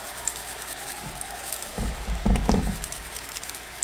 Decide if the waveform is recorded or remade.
remade